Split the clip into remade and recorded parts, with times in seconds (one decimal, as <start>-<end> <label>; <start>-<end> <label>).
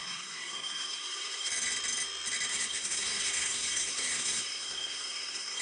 0.0-1.5 remade; 1.5-2.5 recorded; 2.5-5.6 remade